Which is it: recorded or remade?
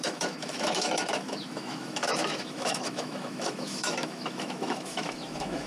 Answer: remade